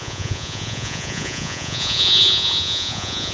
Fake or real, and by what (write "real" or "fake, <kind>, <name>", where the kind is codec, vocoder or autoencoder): fake, vocoder, Vocos